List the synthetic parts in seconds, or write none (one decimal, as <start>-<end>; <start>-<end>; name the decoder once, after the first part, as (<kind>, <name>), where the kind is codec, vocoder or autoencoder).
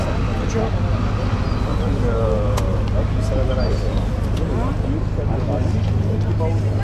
none